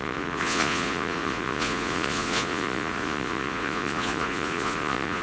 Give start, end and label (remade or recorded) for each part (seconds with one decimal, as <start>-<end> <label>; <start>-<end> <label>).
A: 0.0-5.2 remade